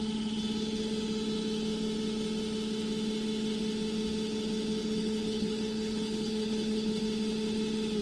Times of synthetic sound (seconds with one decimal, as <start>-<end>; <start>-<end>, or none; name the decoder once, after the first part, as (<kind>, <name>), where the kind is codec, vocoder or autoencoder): 4.8-7.0 (codec, HILCodec)